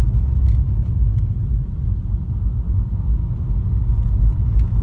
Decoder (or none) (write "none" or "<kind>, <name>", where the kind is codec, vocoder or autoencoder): none